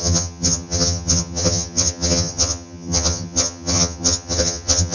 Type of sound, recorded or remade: remade